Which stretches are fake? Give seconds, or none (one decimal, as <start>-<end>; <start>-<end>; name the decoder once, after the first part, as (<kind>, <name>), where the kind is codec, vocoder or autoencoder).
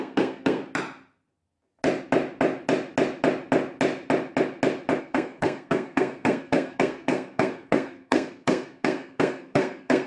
0.0-0.6 (codec, SNAC); 5.0-10.1